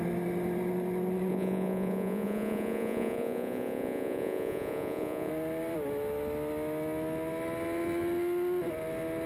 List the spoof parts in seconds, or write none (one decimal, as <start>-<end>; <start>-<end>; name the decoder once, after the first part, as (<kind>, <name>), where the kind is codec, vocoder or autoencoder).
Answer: 1.3-5.3 (vocoder, Vocos)